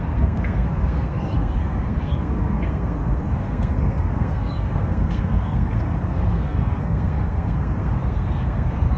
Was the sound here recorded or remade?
remade